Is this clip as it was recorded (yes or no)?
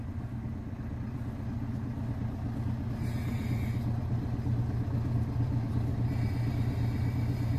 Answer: yes